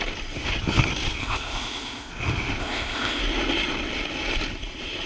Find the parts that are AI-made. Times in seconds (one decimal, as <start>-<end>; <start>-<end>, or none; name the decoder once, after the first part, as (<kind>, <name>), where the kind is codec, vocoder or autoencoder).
1.2-2.1 (codec, ZipCodec); 2.6-3.2